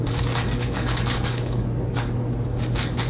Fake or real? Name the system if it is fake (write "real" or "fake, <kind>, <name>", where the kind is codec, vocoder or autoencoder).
fake, codec, DAC